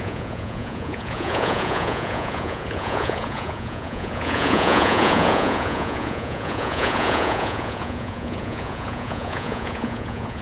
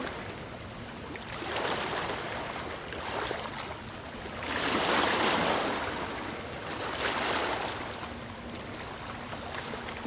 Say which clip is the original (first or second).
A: second